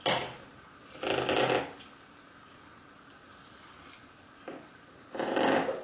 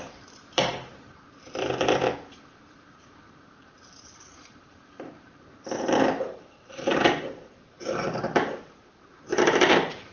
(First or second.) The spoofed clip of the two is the second